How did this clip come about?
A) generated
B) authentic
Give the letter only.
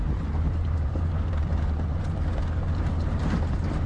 A